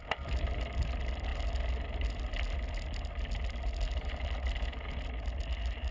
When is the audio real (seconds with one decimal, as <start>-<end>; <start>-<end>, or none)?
0.0-5.9